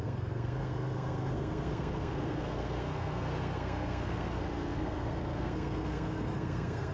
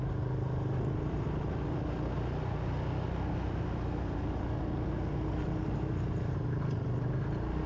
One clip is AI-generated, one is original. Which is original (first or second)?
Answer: second